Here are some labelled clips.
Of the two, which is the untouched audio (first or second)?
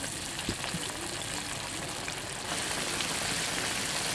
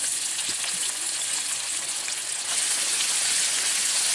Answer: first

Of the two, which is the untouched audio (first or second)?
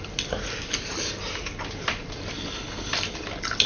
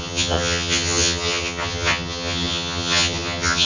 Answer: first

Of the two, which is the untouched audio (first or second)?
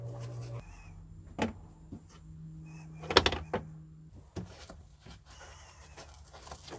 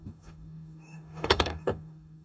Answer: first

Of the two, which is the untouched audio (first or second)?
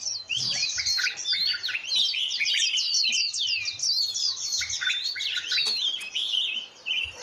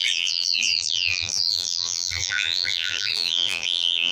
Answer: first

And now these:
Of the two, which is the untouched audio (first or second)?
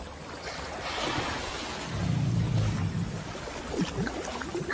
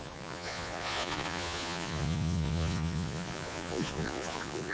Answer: first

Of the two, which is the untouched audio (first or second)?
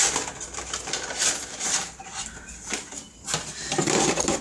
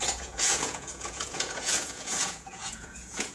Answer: first